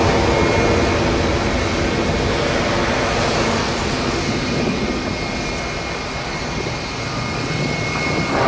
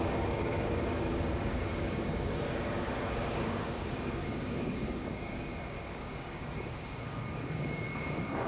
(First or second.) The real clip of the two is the first